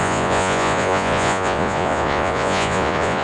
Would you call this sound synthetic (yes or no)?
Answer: yes